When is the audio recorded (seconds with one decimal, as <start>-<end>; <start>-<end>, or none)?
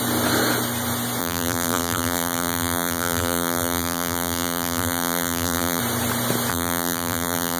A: 0.0-1.2; 5.8-6.5